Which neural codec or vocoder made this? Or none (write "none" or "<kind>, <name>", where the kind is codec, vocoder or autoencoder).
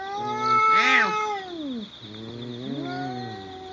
none